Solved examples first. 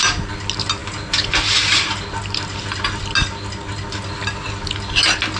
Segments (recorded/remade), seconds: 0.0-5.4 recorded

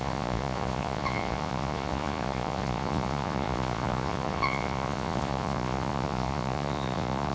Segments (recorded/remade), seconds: 0.0-7.3 remade